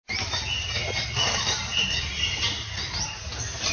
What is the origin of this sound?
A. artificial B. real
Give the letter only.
B